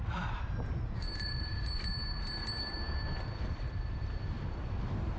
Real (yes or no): no